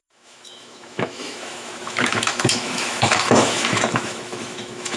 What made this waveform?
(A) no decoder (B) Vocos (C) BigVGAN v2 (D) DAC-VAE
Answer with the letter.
D